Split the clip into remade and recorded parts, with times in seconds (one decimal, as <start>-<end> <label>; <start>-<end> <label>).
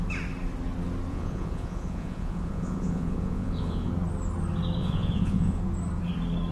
0.0-1.1 recorded; 1.1-3.9 remade; 3.9-4.8 recorded; 4.8-5.6 remade; 5.6-6.5 recorded